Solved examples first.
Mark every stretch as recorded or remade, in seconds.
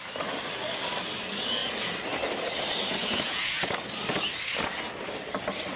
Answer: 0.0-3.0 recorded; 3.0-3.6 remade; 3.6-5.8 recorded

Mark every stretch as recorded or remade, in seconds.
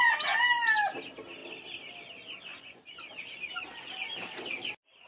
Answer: 0.0-2.5 recorded; 2.5-3.0 remade; 3.0-5.1 recorded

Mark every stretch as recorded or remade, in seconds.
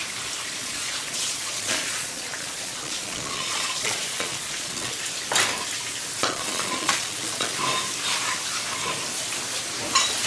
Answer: 0.0-0.6 recorded; 0.6-4.9 remade; 4.9-6.2 recorded; 6.2-7.6 remade; 7.6-10.3 recorded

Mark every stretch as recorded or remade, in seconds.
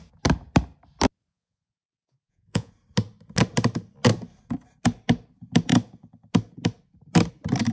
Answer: 0.0-1.3 recorded; 1.3-2.7 remade; 2.7-7.7 recorded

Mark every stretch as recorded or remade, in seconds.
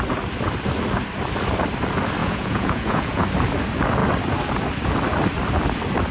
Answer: 0.0-2.2 recorded; 2.2-3.2 remade; 3.2-6.1 recorded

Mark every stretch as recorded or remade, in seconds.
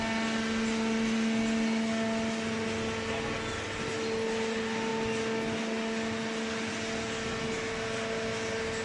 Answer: 0.0-8.8 recorded